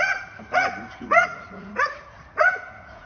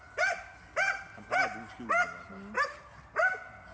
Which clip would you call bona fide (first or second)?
second